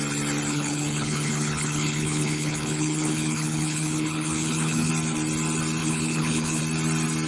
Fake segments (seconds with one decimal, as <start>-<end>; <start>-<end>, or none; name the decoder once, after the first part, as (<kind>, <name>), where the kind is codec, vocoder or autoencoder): 0.5-4.9 (codec, HILCodec); 5.8-6.6